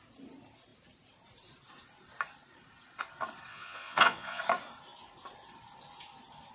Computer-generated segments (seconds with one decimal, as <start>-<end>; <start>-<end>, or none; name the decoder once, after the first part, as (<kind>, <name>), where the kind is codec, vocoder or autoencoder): 3.5-4.4 (vocoder, Vocos)